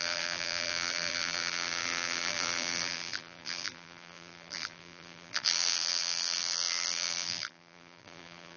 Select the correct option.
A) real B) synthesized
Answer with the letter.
B